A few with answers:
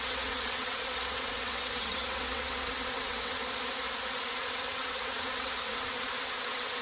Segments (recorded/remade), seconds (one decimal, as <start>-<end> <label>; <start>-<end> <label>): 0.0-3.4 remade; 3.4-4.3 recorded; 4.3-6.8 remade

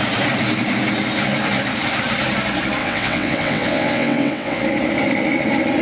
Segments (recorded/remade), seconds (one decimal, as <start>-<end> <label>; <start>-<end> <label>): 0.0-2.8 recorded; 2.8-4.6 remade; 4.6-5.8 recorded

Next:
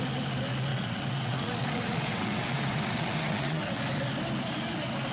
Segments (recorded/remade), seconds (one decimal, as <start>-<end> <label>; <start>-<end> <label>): 0.0-0.7 recorded; 0.7-3.8 remade; 3.8-5.1 recorded

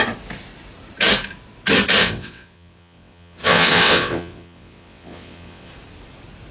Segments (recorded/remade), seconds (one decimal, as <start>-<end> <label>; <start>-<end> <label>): 0.0-2.0 recorded; 2.0-5.7 remade; 5.7-6.5 recorded

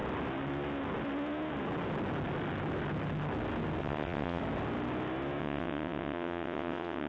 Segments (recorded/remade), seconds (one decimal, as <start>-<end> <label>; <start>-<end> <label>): 0.0-3.8 recorded; 3.8-4.4 remade; 4.4-5.4 recorded; 5.4-7.1 remade

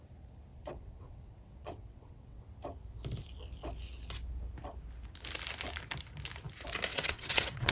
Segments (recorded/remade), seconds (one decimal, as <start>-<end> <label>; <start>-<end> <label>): 0.0-0.5 recorded; 0.5-2.4 remade; 2.4-6.9 recorded; 6.9-7.7 remade

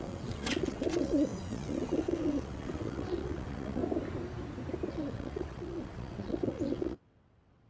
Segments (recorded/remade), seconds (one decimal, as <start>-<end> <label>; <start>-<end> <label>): 0.0-3.8 remade; 3.8-4.9 recorded; 4.9-7.7 remade

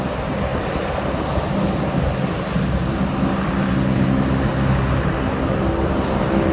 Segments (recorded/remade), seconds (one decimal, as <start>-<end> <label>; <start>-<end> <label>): 0.0-6.5 recorded